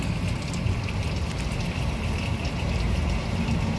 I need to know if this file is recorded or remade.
recorded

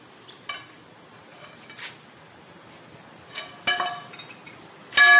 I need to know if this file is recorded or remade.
recorded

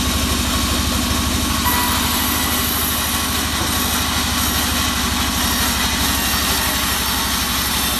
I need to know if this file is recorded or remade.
recorded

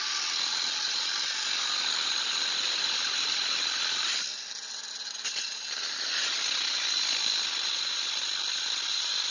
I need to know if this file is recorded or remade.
recorded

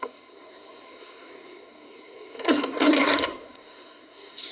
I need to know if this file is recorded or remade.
remade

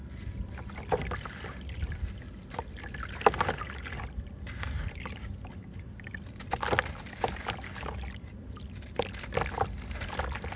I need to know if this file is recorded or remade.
recorded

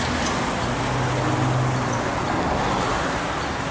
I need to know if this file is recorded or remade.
recorded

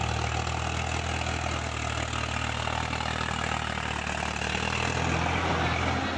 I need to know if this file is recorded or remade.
recorded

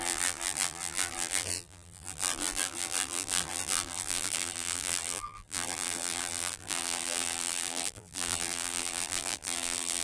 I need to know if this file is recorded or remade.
remade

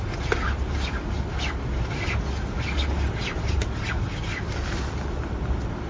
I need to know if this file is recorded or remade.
recorded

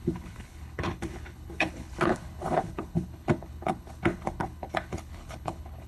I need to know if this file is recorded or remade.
remade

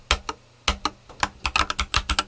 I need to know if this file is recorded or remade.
recorded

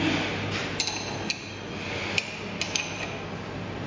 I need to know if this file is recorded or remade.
recorded